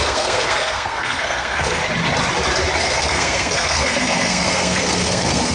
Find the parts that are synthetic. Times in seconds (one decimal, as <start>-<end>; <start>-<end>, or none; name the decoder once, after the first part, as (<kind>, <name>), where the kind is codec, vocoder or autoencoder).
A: 0.0-1.8 (codec, SNAC); 2.8-5.5